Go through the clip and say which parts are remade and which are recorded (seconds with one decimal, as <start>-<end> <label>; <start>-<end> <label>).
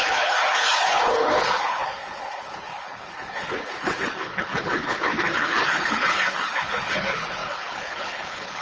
0.0-8.6 remade